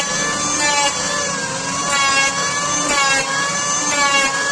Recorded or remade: recorded